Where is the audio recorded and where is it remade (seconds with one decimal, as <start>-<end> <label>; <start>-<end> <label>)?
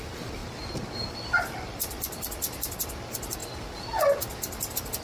0.0-5.0 recorded